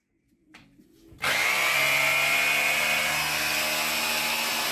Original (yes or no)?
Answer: yes